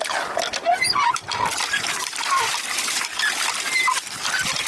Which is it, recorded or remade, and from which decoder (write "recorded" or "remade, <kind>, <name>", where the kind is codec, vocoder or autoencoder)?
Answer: recorded